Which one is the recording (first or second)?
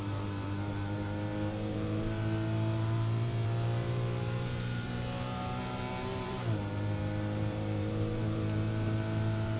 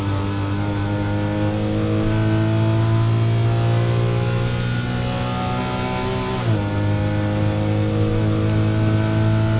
second